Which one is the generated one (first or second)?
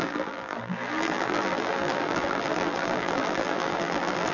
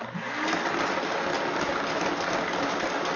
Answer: first